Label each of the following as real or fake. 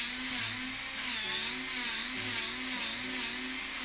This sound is real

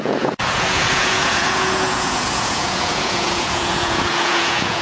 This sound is fake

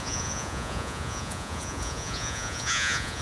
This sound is fake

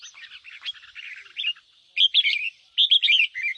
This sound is real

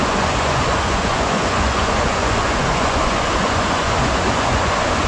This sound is fake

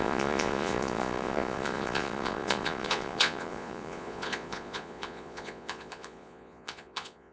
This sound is fake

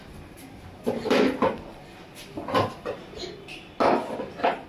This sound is real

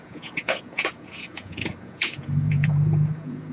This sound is fake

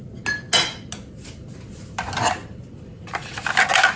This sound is real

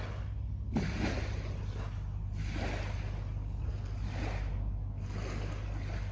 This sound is real